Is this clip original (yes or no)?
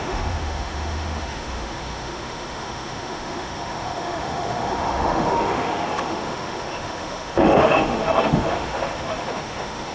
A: no